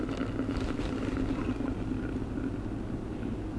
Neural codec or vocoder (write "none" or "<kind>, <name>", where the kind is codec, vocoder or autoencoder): none